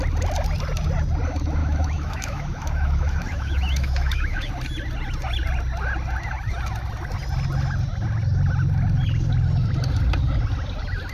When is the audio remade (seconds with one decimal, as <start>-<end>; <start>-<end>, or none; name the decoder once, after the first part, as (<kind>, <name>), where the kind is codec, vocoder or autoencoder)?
1.6-4.5 (autoencoder, DAC-VAE)